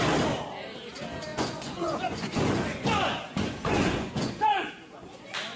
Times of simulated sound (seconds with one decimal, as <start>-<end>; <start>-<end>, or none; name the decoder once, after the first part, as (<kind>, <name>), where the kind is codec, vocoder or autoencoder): 1.3-4.7 (vocoder, Vocos)